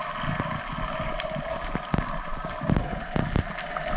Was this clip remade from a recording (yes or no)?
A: no